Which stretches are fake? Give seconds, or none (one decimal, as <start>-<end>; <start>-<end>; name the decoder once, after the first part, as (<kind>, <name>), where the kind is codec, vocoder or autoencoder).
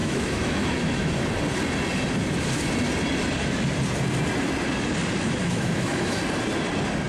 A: 0.0-1.1 (autoencoder, DAC-VAE); 5.4-6.2